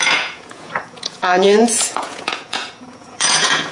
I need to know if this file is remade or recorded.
remade